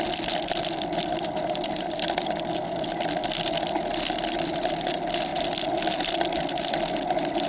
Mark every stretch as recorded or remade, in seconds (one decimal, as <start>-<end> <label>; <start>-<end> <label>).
0.0-5.3 recorded; 5.3-6.2 remade; 6.2-7.5 recorded